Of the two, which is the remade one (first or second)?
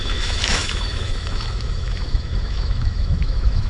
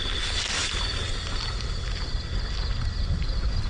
first